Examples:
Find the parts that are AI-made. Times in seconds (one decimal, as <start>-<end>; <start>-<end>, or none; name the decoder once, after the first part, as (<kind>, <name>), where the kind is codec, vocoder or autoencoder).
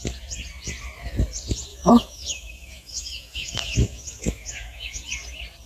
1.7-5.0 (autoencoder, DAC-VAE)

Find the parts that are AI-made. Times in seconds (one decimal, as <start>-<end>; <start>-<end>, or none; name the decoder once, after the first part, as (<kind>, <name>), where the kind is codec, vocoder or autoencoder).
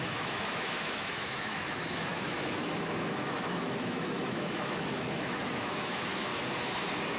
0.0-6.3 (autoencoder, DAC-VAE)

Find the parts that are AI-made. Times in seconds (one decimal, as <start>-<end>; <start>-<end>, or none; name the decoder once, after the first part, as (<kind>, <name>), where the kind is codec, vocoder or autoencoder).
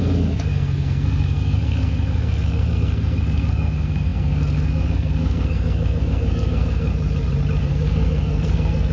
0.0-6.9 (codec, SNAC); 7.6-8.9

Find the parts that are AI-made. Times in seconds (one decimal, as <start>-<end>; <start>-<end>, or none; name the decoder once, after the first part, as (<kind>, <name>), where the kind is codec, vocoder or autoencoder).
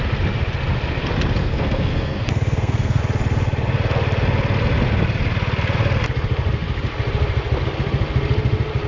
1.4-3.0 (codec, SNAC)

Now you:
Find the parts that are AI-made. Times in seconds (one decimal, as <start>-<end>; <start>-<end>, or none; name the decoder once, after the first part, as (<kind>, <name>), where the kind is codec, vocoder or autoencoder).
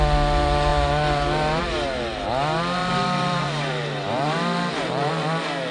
2.8-5.1 (vocoder, BigVGAN v2)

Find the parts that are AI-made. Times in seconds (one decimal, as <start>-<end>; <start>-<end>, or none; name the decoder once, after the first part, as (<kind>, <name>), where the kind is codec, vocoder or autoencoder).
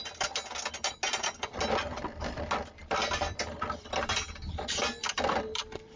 none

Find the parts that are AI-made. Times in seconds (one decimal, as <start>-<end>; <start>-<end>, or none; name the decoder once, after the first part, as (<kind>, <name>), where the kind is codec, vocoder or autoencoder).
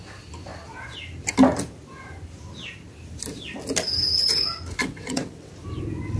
4.8-5.5 (vocoder, WaveNeXt)